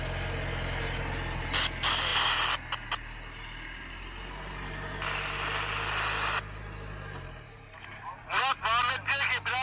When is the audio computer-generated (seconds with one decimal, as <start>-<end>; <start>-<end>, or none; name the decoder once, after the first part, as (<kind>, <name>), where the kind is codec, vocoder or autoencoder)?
none